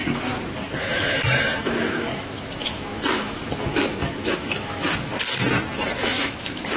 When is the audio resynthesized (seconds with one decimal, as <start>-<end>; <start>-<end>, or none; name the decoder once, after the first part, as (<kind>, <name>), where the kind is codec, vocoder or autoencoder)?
0.8-5.1 (autoencoder, DAC-VAE); 5.7-6.8